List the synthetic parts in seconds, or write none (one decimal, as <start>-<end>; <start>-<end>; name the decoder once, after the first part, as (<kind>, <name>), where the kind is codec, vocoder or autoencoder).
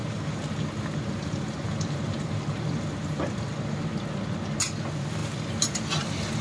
0.0-3.8 (vocoder, BigVGAN v2)